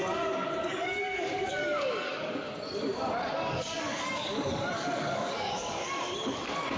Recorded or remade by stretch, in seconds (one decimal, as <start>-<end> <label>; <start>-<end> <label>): 0.0-6.8 remade